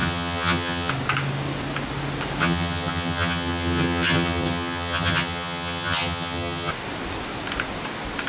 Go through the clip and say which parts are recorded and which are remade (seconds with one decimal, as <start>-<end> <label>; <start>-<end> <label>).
0.0-0.9 remade; 0.9-2.4 recorded; 2.4-6.7 remade; 6.7-8.3 recorded